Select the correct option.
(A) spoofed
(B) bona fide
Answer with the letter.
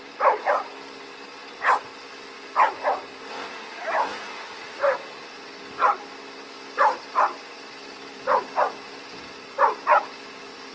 B